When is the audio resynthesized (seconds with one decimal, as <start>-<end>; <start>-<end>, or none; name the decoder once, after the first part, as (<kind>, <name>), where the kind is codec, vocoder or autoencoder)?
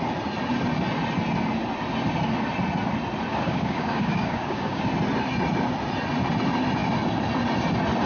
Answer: 3.3-4.8 (codec, DAC)